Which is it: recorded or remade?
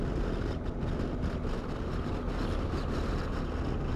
recorded